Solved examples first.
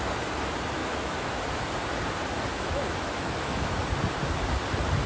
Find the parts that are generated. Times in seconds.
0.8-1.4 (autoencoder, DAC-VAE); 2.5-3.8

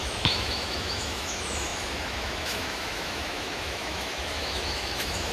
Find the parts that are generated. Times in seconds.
0.0-5.3 (autoencoder, DAC-VAE)

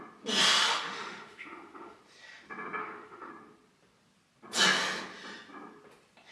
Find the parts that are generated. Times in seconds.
0.7-2.0 (autoencoder, DAC-VAE); 2.8-3.3

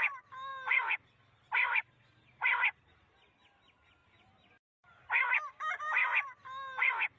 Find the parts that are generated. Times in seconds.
none

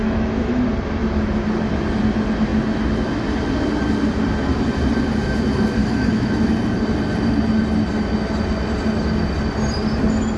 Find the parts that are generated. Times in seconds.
0.0-0.6 (autoencoder, DAC-VAE); 5.8-6.3

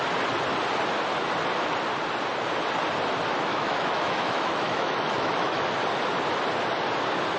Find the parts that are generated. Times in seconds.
3.5-5.6 (autoencoder, DAC-VAE)

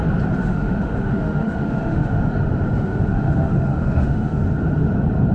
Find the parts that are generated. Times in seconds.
0.4-2.3 (autoencoder, DAC-VAE); 2.7-4.4